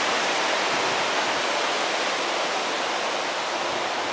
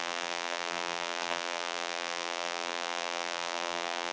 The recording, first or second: first